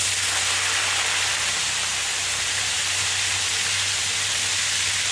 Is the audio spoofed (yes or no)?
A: no